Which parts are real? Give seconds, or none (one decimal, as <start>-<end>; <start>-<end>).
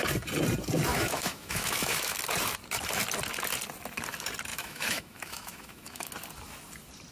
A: 0.0-0.9; 2.2-4.5; 6.1-7.1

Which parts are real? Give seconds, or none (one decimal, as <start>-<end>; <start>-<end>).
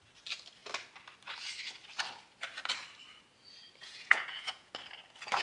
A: 0.0-3.8; 4.7-5.4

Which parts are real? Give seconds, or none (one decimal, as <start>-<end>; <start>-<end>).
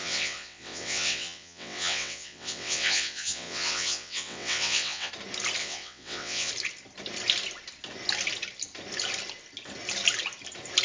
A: 5.1-5.6; 6.5-10.8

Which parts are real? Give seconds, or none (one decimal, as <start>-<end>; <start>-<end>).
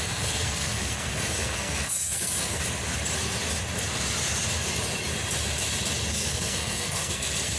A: 2.6-6.1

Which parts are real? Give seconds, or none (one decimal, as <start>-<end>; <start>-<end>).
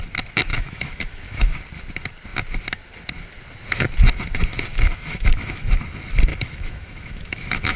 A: 0.0-0.5; 1.6-4.7; 5.7-6.3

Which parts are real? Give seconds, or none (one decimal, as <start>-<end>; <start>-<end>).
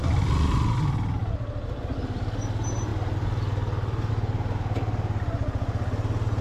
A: 0.0-6.4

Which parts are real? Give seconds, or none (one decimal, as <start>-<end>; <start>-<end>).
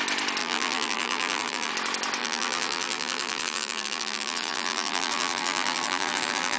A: 0.0-0.4; 1.7-2.2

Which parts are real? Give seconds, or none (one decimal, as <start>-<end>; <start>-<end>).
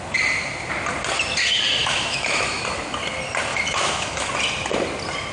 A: 0.0-1.8; 2.6-3.5; 4.3-5.3